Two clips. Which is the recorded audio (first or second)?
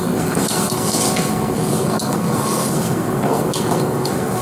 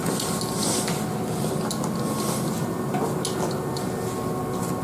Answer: second